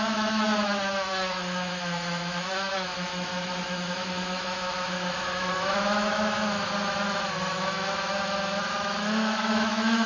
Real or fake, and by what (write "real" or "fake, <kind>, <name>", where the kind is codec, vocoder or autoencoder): fake, autoencoder, DAC-VAE